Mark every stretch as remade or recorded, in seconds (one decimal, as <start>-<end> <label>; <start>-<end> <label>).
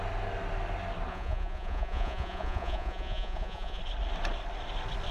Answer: 0.0-1.1 recorded; 1.1-3.8 remade; 3.8-5.1 recorded